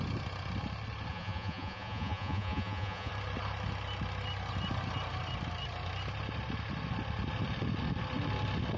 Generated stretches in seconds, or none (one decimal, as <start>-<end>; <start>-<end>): 1.1-3.1